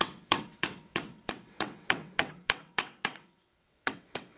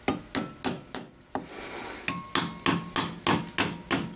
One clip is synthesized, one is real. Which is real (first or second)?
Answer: second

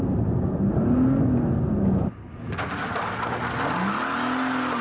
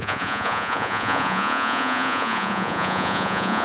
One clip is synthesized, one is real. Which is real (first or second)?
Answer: first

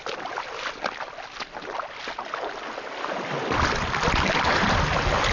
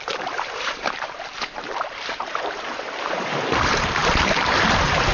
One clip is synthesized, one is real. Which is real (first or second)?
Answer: first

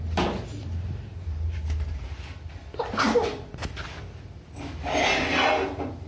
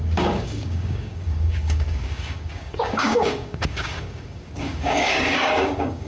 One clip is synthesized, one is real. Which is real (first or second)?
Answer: first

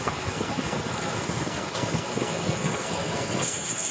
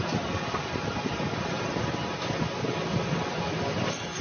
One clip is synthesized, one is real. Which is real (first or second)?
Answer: second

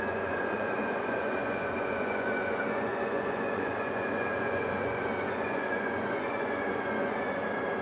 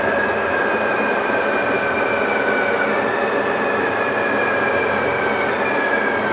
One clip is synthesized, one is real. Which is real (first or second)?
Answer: second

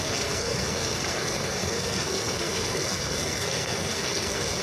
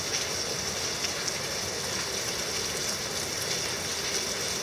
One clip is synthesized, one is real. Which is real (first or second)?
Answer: second